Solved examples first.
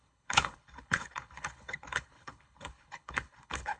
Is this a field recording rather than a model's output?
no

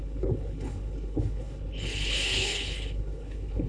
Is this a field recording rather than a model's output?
no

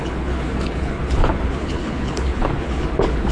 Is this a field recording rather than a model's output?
no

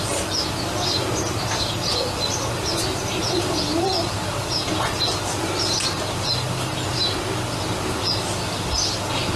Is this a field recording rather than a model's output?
yes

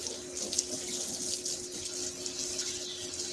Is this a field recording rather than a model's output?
yes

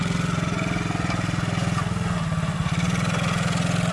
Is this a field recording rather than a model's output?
yes